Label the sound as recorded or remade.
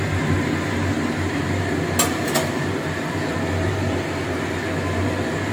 recorded